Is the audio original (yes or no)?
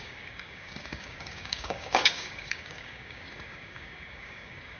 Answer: no